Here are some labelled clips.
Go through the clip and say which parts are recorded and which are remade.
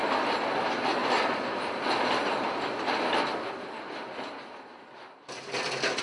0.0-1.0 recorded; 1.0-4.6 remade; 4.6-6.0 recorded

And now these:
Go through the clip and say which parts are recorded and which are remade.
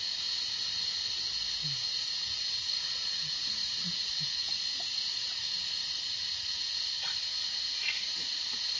0.0-1.9 recorded; 1.9-5.5 remade; 5.5-8.8 recorded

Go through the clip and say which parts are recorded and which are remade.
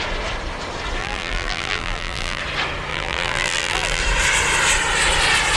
0.0-1.0 recorded; 1.0-2.4 remade; 2.4-2.9 recorded; 2.9-4.0 remade; 4.0-5.6 recorded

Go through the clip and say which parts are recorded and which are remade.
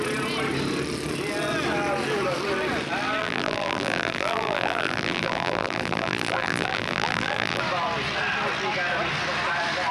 0.0-3.2 recorded; 3.2-7.6 remade; 7.6-9.9 recorded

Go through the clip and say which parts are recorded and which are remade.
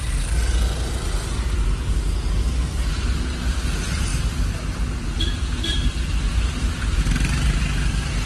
0.0-8.3 recorded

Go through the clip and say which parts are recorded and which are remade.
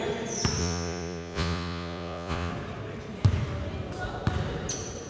0.0-0.6 recorded; 0.6-2.5 remade; 2.5-5.1 recorded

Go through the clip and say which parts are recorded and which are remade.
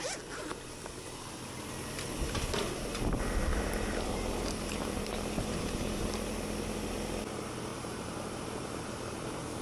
0.0-3.4 recorded; 3.4-6.0 remade; 6.0-7.7 recorded; 7.7-9.6 remade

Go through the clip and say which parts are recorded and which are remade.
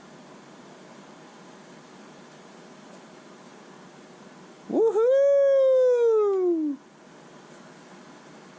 0.0-8.6 recorded